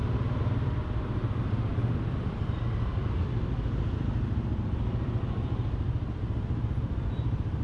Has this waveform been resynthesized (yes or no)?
no